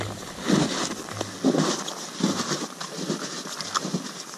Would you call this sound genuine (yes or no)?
yes